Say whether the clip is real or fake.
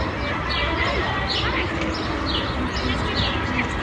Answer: real